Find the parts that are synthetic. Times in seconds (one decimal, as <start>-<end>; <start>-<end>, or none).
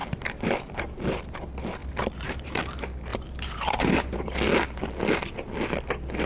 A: 0.0-0.8; 1.8-2.6; 3.1-3.9